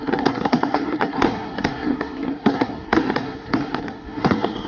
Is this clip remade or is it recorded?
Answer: remade